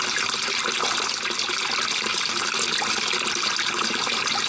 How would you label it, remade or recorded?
recorded